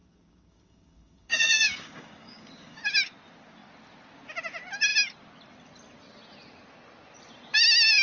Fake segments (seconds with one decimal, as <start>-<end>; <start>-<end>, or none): 0.0-2.8